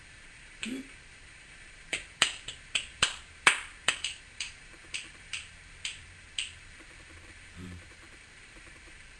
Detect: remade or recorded remade